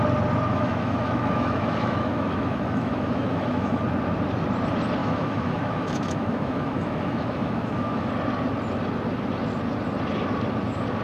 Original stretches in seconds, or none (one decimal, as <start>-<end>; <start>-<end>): 0.0-0.5; 3.8-5.0; 8.1-11.0